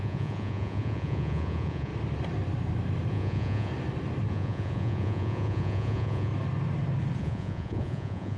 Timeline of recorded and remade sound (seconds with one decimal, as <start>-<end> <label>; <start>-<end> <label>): 0.0-1.9 remade; 1.9-3.1 recorded; 3.1-3.7 remade; 3.7-4.3 recorded; 4.3-6.3 remade; 6.3-7.2 recorded; 7.2-8.4 remade